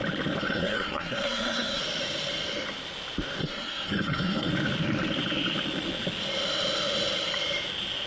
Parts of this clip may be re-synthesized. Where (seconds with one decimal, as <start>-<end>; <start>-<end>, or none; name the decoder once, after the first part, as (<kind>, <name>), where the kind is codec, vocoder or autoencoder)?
0.4-1.8 (codec, SNAC); 3.4-4.5